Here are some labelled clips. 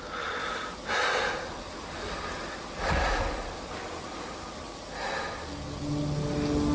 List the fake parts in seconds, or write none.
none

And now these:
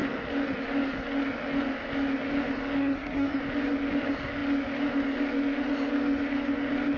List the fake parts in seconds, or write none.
2.8-3.4 (codec, SNAC)

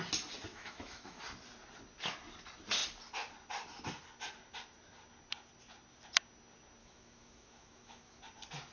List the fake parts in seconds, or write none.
0.5-1.2 (autoencoder, DAC-VAE); 6.8-8.2